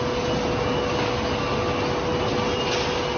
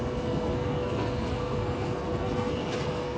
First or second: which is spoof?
second